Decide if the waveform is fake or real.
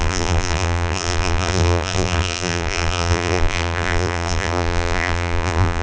fake